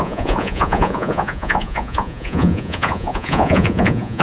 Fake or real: fake